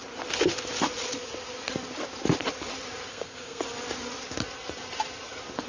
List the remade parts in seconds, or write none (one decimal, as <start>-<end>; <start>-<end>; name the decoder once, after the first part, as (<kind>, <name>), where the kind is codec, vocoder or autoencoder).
3.1-3.6 (codec, SNAC)